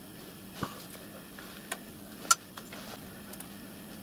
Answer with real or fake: real